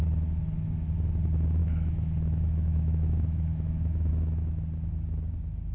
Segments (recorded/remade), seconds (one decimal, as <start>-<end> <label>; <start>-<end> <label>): 0.0-1.6 recorded; 1.6-4.1 remade; 4.1-5.7 recorded